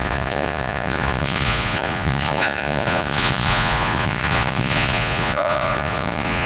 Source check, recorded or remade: remade